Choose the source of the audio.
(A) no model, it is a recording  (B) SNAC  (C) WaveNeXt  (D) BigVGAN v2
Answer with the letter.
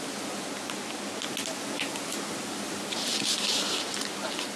A